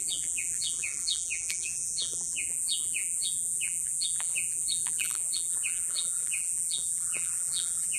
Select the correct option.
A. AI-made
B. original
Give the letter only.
A